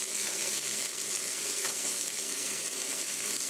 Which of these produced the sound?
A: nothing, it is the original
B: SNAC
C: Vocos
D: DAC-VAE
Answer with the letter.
B